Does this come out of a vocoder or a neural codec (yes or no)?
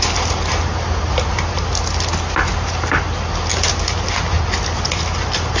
no